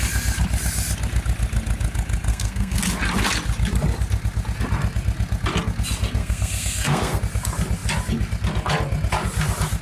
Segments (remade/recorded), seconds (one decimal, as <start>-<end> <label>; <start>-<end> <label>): 0.0-2.3 recorded; 2.3-2.8 remade; 2.8-6.2 recorded; 6.2-7.2 remade; 7.2-9.8 recorded